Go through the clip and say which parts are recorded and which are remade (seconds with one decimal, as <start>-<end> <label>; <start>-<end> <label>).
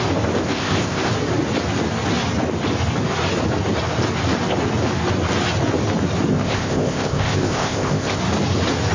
0.0-0.4 recorded; 0.4-1.1 remade; 1.1-6.3 recorded; 6.3-8.2 remade; 8.2-8.9 recorded